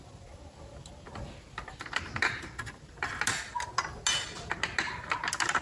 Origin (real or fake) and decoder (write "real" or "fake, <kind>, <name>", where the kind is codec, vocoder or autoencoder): real